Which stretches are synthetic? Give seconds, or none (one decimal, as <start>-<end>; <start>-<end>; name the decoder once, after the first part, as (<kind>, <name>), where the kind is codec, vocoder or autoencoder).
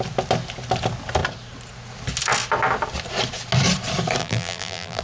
4.2-5.0 (vocoder, BigVGAN v2)